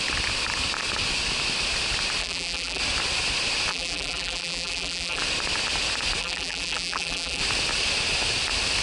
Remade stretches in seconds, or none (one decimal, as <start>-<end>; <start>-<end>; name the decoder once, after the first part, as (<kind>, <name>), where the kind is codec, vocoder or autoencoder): 2.2-2.8 (vocoder, BigVGAN v2); 3.7-5.2; 6.2-7.4